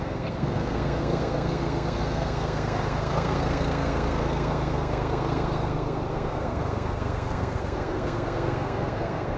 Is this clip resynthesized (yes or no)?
yes